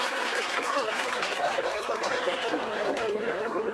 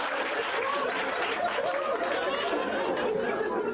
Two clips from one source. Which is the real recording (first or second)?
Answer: second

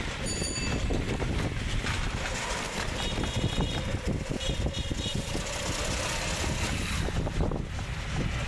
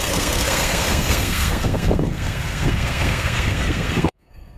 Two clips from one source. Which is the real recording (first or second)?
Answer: first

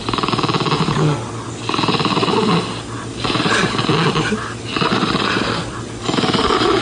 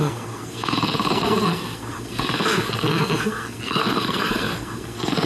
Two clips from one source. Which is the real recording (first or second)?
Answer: first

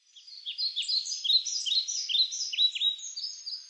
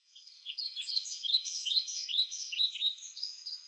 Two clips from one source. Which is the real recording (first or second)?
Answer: first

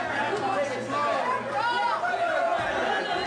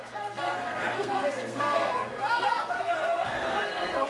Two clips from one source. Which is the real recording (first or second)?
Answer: first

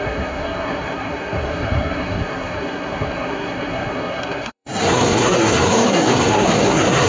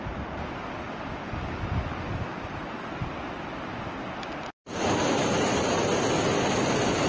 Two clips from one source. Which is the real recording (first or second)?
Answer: second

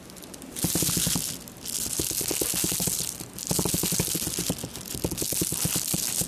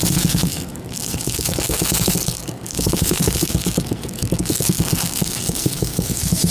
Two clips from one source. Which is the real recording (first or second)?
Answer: first